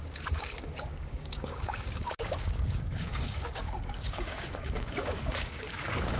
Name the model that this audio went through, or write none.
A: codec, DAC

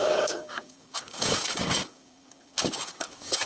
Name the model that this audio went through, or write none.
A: codec, DAC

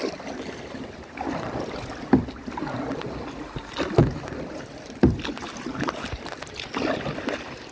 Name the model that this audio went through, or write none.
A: none